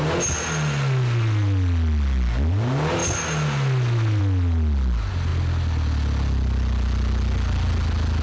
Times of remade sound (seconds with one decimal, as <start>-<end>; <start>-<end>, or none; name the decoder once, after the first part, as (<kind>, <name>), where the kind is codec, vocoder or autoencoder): none